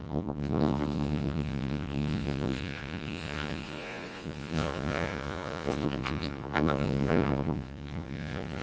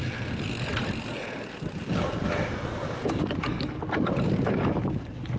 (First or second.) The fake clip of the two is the first